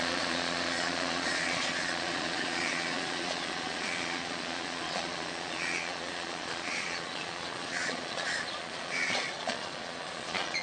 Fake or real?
fake